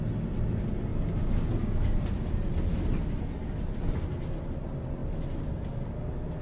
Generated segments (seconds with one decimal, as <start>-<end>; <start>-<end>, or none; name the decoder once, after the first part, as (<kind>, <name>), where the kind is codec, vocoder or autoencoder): none